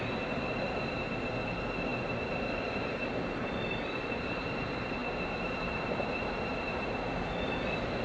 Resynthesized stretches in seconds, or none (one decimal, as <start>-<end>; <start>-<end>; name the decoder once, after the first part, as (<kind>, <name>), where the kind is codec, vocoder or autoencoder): 1.9-2.6 (vocoder, BigVGAN v2)